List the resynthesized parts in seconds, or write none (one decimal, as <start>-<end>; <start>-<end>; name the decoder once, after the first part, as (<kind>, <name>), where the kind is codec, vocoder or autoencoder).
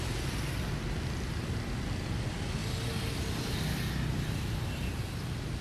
none